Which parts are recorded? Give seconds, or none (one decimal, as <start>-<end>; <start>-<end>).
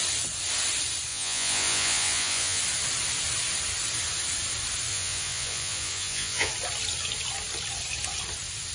0.0-1.1; 2.6-4.9; 6.5-8.7